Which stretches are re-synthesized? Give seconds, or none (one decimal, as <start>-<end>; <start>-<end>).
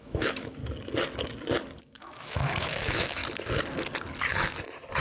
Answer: 0.0-0.6; 1.8-3.2